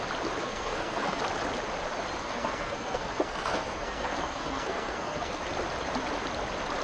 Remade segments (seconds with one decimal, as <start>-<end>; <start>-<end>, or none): 0.4-1.2; 2.2-5.4

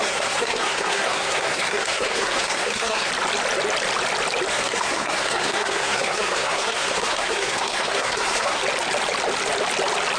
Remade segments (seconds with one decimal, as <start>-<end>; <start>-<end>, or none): 0.0-3.1; 4.5-8.6

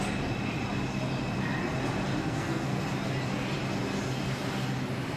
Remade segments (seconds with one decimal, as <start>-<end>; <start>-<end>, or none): 2.2-2.8